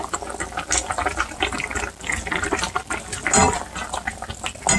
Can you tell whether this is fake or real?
real